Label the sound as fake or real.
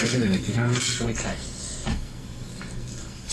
fake